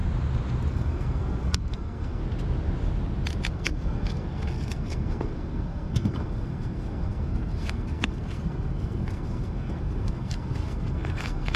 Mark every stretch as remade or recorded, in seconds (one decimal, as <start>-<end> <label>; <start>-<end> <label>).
0.0-0.7 recorded; 0.7-2.2 remade; 2.2-3.5 recorded; 3.5-11.6 remade